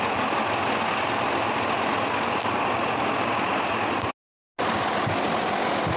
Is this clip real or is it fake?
real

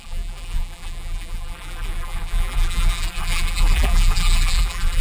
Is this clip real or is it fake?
fake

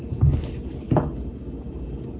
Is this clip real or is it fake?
real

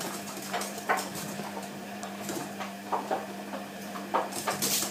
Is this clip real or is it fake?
fake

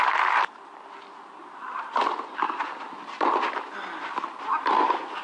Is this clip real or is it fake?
real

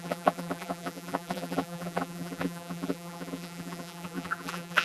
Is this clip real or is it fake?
fake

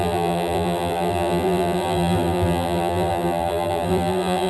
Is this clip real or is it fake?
fake